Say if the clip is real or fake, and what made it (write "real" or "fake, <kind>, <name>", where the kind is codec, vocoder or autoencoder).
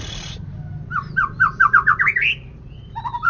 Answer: real